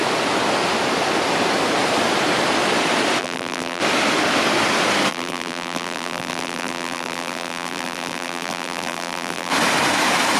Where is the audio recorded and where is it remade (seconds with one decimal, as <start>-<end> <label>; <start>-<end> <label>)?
0.0-3.2 recorded; 3.2-3.8 remade; 3.8-5.1 recorded; 5.1-9.5 remade; 9.5-10.4 recorded